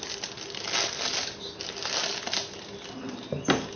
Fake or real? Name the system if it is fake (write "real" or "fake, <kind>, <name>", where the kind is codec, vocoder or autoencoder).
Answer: real